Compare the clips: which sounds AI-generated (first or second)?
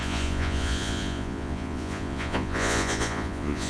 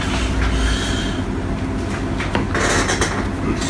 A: first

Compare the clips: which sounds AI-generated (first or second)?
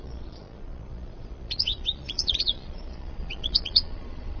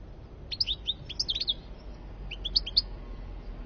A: first